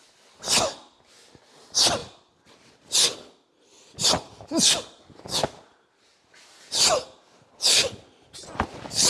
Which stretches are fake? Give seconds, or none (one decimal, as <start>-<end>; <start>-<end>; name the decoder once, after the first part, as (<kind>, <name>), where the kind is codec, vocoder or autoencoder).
none